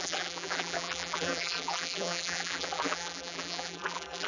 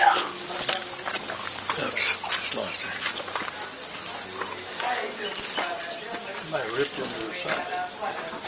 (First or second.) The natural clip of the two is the second